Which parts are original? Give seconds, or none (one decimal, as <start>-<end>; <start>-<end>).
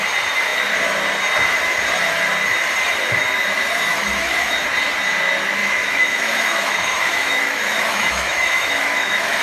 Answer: 0.0-3.9; 4.5-5.6